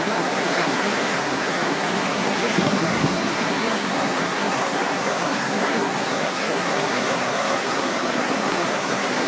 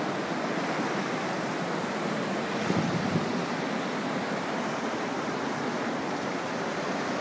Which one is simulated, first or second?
first